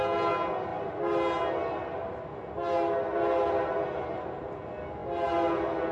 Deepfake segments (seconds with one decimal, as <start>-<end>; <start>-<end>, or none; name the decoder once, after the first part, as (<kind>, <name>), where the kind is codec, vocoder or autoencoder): none